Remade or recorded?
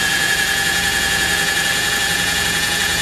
remade